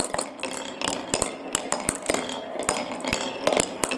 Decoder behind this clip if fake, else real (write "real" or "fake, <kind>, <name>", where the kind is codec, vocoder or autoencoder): real